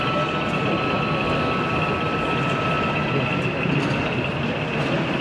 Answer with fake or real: real